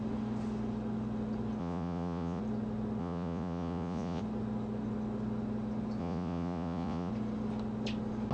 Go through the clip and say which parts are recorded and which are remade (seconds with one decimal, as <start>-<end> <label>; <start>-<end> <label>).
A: 0.0-1.6 recorded; 1.6-2.4 remade; 2.4-3.0 recorded; 3.0-4.2 remade; 4.2-6.0 recorded; 6.0-7.1 remade; 7.1-8.3 recorded